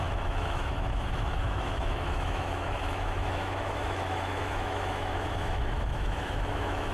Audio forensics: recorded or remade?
remade